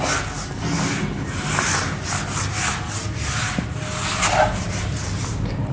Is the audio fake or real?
real